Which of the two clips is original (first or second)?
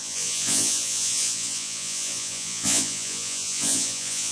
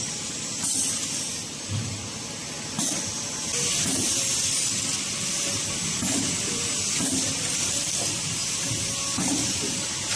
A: second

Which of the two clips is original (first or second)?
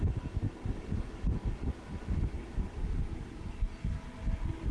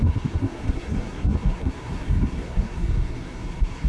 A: first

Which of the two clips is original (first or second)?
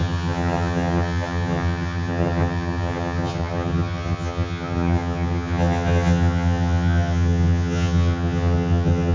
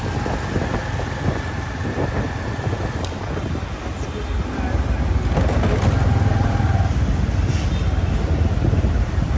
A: second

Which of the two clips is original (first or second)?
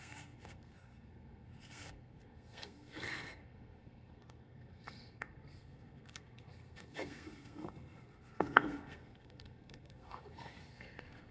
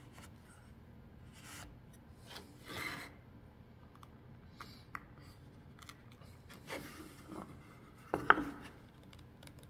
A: second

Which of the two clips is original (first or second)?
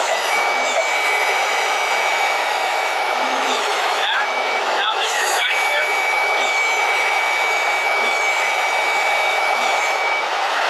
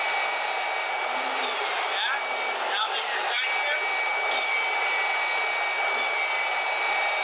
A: second